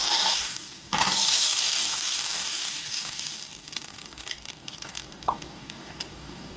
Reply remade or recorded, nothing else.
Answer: remade